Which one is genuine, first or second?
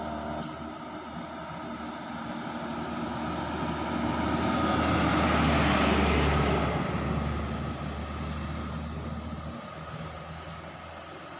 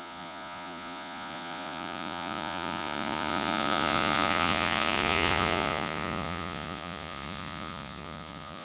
first